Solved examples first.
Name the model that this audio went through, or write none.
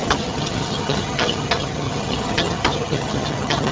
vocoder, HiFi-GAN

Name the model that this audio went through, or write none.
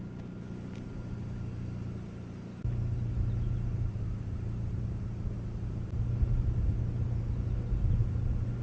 none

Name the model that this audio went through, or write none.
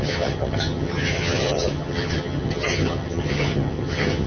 vocoder, HiFi-GAN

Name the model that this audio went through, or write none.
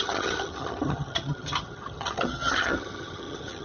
vocoder, HiFi-GAN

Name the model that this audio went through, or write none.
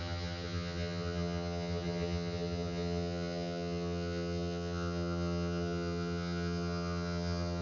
vocoder, HiFi-GAN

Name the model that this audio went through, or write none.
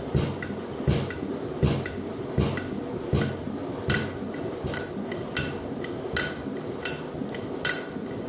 none